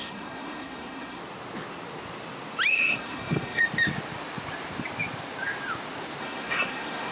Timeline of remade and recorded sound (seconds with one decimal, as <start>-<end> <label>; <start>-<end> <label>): 0.0-1.2 remade; 1.2-2.7 recorded; 2.7-3.6 remade; 3.6-6.2 recorded; 6.2-7.1 remade